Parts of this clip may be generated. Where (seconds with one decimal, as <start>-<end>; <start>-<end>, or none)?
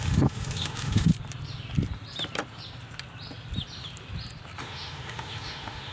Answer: 0.0-1.1; 4.6-5.9